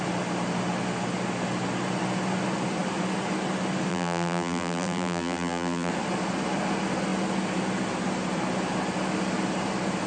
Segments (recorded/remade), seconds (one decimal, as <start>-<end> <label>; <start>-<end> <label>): 0.0-3.9 recorded; 3.9-5.9 remade; 5.9-10.1 recorded